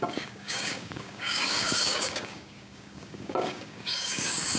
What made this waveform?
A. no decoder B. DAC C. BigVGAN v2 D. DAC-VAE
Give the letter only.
B